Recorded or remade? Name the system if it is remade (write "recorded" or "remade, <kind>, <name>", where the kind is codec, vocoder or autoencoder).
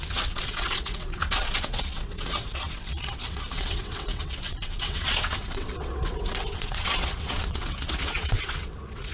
remade, vocoder, WaveNeXt